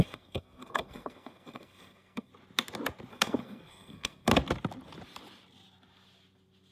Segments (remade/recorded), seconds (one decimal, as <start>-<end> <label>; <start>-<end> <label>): 0.0-2.3 remade; 2.3-3.1 recorded; 3.1-4.3 remade; 4.3-6.7 recorded